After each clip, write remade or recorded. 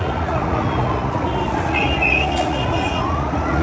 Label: remade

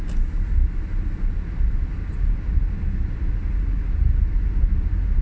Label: recorded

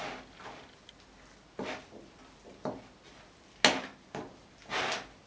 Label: recorded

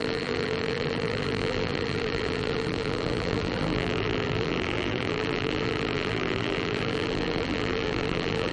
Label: remade